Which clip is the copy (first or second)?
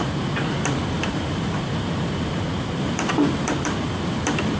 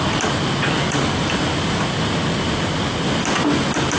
first